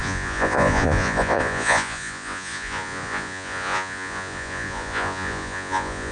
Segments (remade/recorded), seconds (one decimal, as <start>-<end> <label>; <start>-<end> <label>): 0.0-6.1 remade